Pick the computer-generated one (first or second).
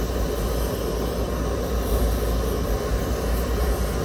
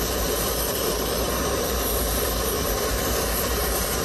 second